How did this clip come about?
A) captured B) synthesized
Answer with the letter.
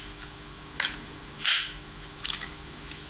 B